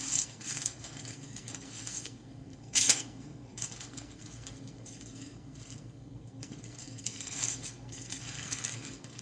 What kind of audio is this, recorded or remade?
remade